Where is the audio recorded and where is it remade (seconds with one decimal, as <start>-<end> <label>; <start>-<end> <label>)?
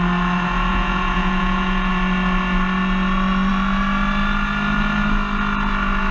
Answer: 0.0-0.7 recorded; 0.7-1.9 remade; 1.9-6.1 recorded